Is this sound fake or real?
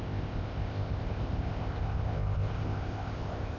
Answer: fake